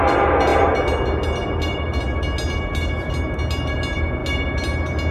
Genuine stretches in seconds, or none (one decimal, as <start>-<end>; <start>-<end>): 0.0-5.1